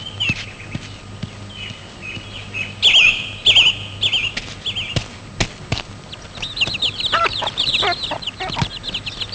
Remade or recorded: recorded